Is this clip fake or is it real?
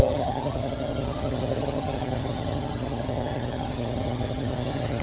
fake